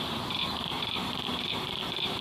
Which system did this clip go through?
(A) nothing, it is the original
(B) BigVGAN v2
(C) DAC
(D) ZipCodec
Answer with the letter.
B